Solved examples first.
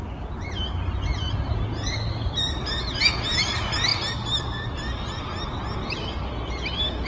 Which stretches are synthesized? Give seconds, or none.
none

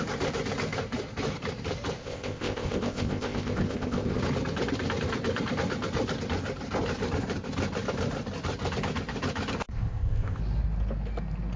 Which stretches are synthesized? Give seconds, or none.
2.0-4.2 (codec, ZipCodec); 9.7-10.4

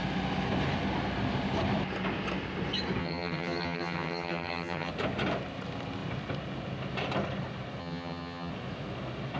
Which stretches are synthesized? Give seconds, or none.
3.0-4.9 (vocoder, HiFi-GAN); 7.8-8.5

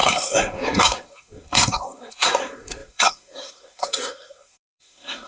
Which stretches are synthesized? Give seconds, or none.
0.0-5.3 (codec, SNAC)

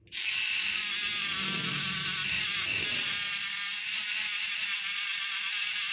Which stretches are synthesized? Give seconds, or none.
none